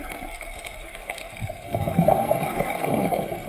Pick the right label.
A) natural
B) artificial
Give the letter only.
B